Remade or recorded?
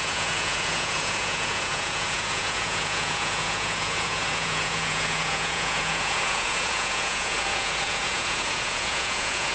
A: remade